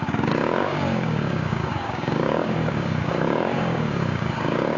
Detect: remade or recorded remade